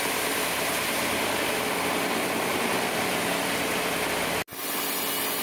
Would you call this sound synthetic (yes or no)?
no